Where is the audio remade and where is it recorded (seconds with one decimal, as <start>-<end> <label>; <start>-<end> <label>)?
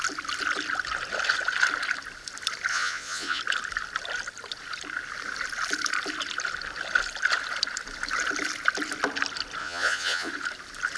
0.0-2.7 recorded; 2.7-3.4 remade; 3.4-9.6 recorded; 9.6-10.3 remade; 10.3-11.0 recorded